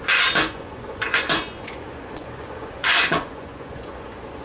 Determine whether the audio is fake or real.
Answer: fake